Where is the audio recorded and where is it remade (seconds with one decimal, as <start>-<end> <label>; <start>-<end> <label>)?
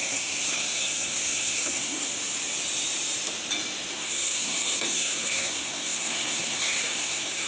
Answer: 0.0-2.1 remade; 2.1-3.9 recorded; 3.9-7.5 remade